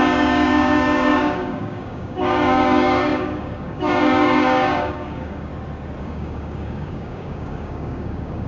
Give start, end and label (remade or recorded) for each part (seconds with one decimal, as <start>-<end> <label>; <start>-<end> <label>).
0.0-5.5 remade; 5.5-6.0 recorded; 6.0-8.5 remade